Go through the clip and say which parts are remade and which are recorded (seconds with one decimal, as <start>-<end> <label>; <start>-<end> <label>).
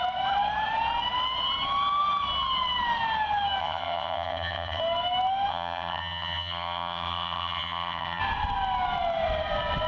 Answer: 0.0-3.6 recorded; 3.6-4.8 remade; 4.8-5.5 recorded; 5.5-8.2 remade; 8.2-9.9 recorded